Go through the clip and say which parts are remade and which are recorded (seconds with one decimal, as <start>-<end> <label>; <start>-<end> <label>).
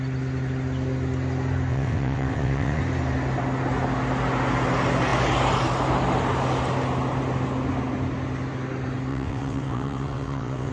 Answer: 0.0-1.7 recorded; 1.7-2.8 remade; 2.8-9.1 recorded; 9.1-10.7 remade